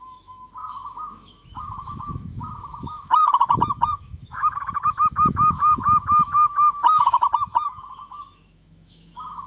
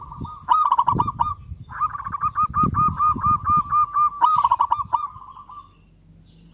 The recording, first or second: second